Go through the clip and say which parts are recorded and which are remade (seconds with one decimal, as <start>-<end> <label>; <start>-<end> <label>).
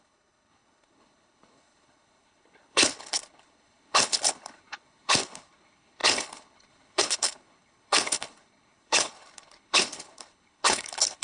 0.0-11.2 remade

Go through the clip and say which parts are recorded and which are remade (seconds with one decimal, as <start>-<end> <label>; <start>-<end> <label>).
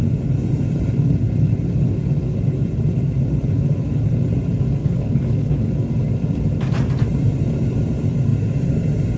0.0-4.8 recorded; 4.8-5.7 remade; 5.7-9.2 recorded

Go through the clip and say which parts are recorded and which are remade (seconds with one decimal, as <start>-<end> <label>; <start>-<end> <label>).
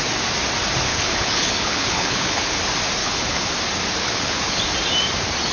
0.0-0.9 recorded; 0.9-2.6 remade; 2.6-3.0 recorded; 3.0-3.5 remade; 3.5-4.0 recorded; 4.0-4.6 remade; 4.6-5.5 recorded